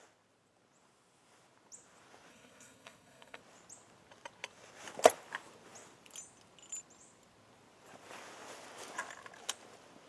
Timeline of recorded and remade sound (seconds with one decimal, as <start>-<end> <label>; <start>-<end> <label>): 0.0-2.3 recorded; 2.3-3.4 remade; 3.4-10.1 recorded